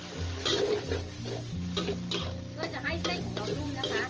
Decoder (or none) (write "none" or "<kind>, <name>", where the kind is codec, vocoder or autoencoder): none